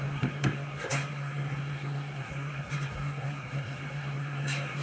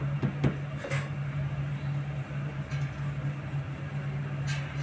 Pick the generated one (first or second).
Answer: first